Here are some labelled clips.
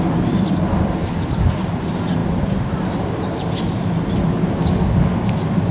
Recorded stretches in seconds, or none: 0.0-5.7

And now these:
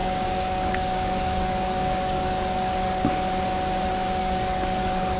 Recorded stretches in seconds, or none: 3.1-4.2

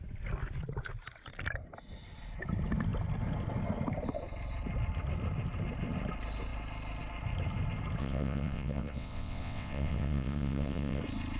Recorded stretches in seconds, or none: 0.0-8.0; 11.0-11.4